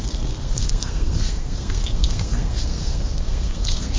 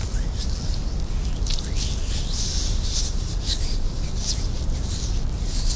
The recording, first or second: second